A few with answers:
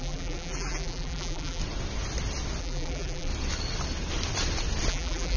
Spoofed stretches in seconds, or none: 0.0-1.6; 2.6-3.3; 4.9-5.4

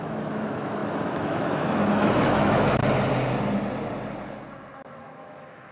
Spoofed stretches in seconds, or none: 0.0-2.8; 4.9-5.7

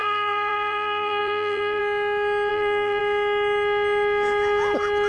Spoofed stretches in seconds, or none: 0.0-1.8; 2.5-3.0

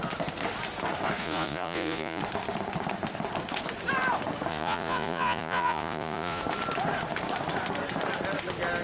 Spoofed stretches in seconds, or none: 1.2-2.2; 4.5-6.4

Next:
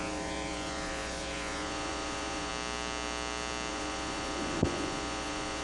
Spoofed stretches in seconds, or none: 0.0-2.5; 3.7-5.6

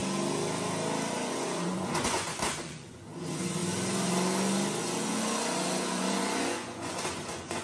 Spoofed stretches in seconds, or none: 1.1-3.6; 4.8-7.6